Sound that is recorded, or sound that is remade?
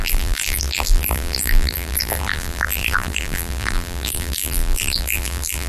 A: remade